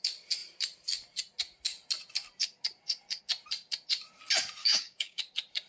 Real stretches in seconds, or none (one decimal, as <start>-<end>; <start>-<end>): 0.0-4.6; 5.2-5.7